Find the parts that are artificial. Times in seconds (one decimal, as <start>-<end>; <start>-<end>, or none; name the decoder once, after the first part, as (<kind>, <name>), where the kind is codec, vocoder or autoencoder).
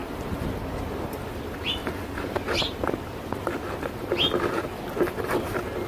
0.0-1.4 (vocoder, BigVGAN v2); 1.8-2.8